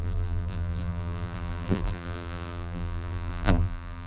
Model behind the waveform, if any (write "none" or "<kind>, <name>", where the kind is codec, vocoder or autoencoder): vocoder, BigVGAN v2